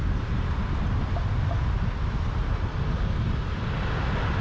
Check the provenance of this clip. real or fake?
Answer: real